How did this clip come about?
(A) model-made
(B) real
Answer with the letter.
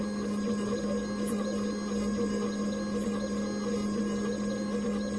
B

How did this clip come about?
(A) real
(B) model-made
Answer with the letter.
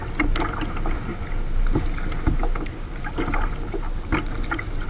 A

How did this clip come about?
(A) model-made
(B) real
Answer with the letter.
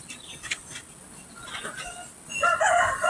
B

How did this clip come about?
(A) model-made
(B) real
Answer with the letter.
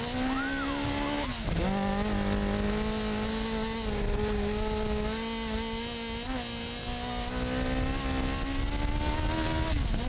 B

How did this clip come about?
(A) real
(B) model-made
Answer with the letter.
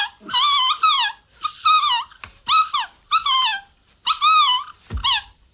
A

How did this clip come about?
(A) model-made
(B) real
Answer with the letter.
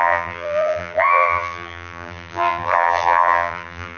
A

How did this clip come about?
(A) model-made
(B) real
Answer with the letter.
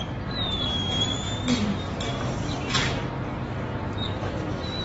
B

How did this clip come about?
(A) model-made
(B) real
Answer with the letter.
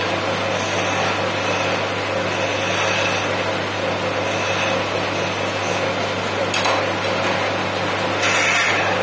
B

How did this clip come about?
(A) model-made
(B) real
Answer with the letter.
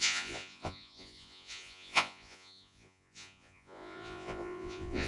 A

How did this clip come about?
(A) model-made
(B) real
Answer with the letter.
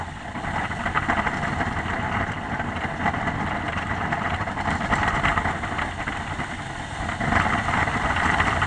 B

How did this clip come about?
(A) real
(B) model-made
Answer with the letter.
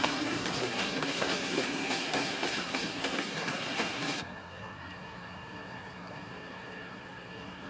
B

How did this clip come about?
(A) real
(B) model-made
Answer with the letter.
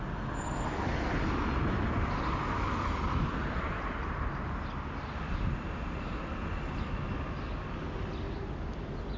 A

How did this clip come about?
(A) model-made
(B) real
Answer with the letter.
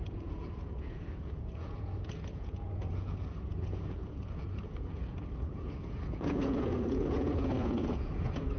A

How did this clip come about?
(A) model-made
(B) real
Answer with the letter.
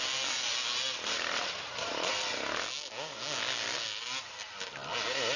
B